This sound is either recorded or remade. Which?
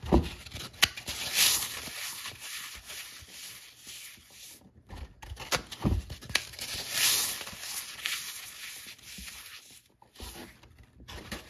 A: recorded